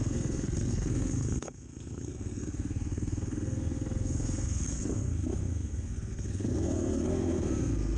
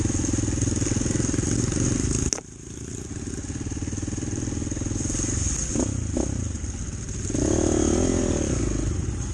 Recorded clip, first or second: second